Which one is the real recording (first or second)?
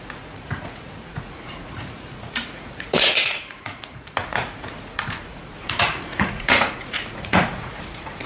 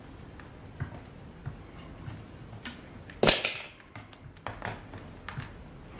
second